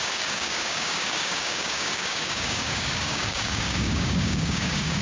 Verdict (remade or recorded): remade